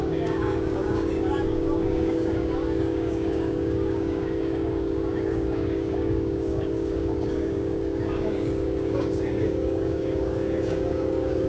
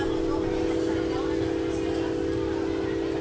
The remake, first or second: first